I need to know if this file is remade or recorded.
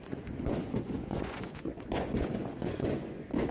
remade